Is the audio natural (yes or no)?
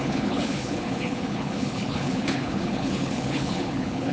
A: no